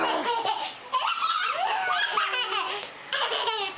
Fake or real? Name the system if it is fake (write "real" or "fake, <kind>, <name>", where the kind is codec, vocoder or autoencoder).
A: real